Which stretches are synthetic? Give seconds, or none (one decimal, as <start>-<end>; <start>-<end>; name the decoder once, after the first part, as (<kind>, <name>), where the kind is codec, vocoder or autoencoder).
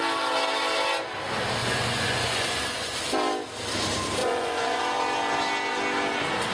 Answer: 1.6-3.0 (vocoder, Vocos); 4.2-4.8